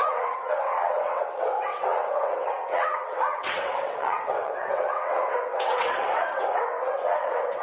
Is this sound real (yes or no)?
no